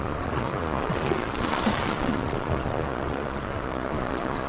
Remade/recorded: remade